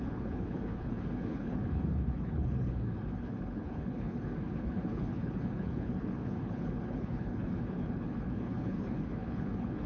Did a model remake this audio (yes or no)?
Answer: yes